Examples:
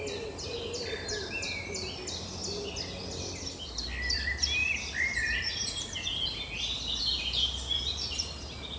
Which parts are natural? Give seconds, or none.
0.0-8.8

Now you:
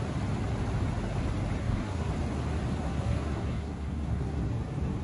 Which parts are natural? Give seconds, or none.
0.0-1.6; 2.1-2.8; 4.5-5.0

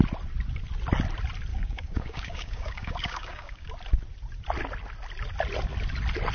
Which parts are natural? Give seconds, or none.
0.0-1.5; 3.7-6.3